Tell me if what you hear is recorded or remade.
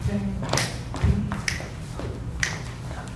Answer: remade